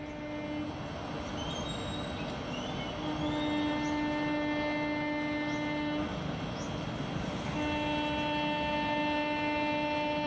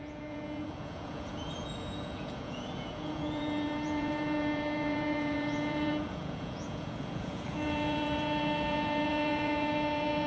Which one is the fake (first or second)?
second